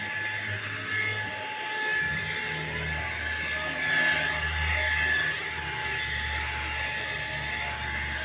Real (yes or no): yes